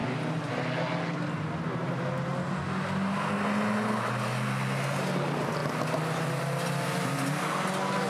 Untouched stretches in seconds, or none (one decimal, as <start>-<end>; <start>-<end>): 0.0-8.1